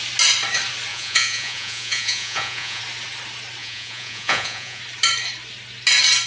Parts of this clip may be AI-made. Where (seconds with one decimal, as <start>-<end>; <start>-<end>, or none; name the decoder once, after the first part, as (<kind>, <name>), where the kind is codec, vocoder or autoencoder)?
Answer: 0.9-2.8 (vocoder, Vocos); 3.6-4.8